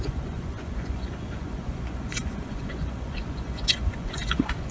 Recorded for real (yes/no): no